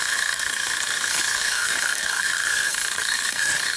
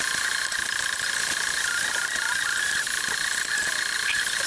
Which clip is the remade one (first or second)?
first